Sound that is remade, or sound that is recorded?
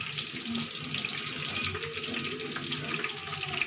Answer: recorded